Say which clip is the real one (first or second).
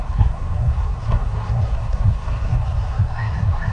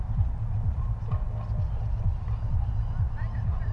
second